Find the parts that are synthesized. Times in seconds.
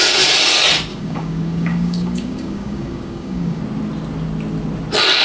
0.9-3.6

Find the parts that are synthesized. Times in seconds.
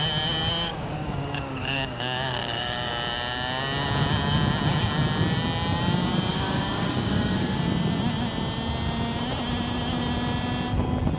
0.7-2.9; 6.3-7.6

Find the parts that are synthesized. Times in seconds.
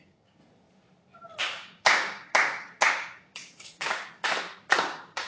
0.0-0.4; 1.4-2.3; 2.9-4.3; 4.8-5.3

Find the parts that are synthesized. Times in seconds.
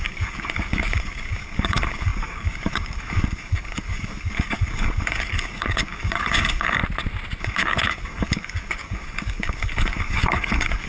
0.0-6.8; 7.4-10.9